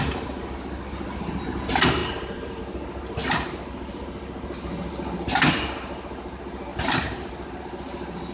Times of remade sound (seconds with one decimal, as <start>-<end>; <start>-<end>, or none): 2.0-2.6